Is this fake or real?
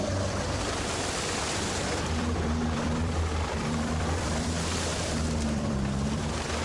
fake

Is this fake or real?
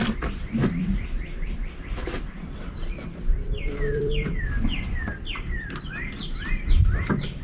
fake